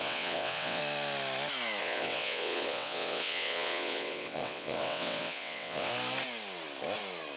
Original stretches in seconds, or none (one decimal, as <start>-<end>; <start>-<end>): 0.8-1.8; 5.9-7.4